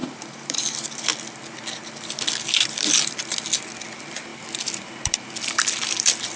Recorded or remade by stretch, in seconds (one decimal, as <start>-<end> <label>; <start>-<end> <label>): 0.0-0.6 remade; 0.6-6.4 recorded